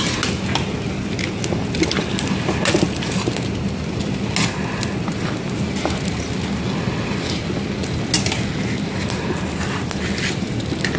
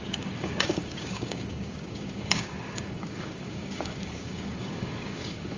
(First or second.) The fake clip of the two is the second